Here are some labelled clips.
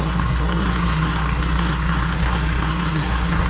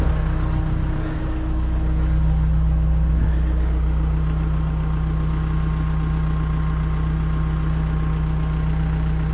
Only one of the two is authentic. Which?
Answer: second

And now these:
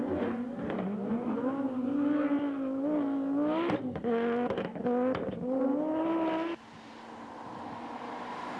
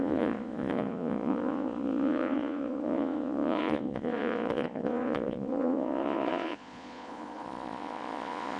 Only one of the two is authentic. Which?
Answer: first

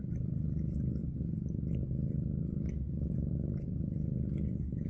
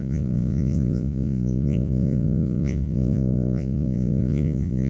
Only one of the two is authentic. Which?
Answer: first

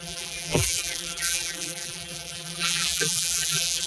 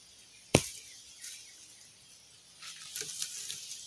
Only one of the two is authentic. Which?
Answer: second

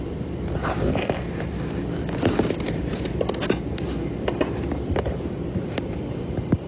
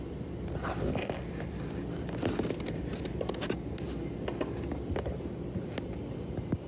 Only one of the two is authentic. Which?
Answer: second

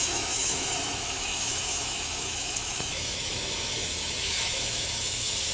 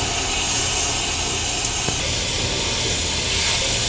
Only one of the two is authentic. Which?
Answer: second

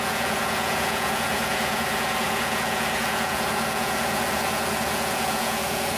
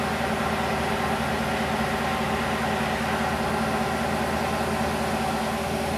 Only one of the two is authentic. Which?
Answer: second